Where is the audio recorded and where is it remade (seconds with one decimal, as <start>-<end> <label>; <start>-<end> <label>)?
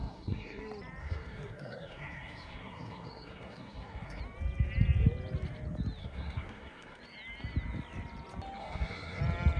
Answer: 0.0-0.6 remade; 0.6-1.0 recorded; 1.0-4.2 remade; 4.2-6.0 recorded; 6.0-7.0 remade; 7.0-8.6 recorded; 8.6-9.2 remade; 9.2-9.6 recorded